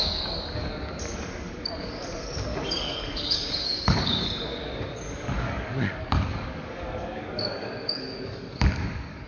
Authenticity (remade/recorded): remade